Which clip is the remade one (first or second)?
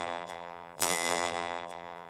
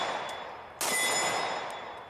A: first